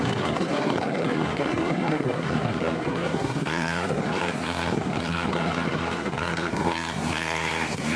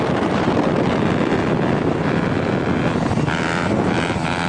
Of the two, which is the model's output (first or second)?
first